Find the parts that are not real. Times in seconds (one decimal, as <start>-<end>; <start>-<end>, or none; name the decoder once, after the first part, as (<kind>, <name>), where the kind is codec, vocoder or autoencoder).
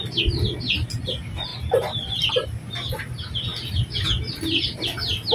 none